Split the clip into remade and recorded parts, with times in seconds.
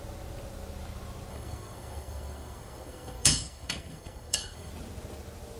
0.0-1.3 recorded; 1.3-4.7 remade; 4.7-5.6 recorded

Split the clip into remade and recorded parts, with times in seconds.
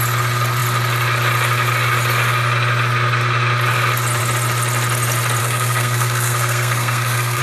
0.0-5.4 recorded; 5.4-7.4 remade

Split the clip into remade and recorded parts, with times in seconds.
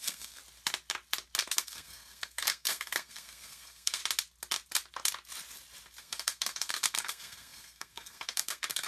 0.0-0.4 remade; 0.4-1.4 recorded; 1.4-4.0 remade; 4.0-6.0 recorded; 6.0-8.9 remade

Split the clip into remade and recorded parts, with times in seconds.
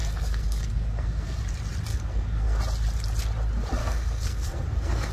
0.0-1.4 remade; 1.4-1.9 recorded; 1.9-2.6 remade; 2.6-3.8 recorded; 3.8-5.1 remade